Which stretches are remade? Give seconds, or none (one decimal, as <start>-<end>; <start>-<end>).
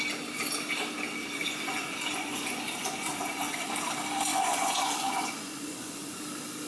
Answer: 1.2-3.7; 4.3-6.2